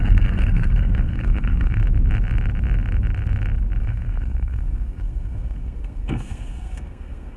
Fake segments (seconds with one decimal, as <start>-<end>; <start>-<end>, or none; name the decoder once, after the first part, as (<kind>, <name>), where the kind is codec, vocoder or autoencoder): 0.0-1.8 (codec, SNAC); 3.8-7.4